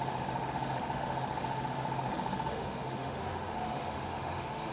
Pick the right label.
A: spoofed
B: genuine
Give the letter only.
A